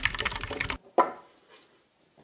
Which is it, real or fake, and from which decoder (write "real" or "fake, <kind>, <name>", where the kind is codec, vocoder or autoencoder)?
real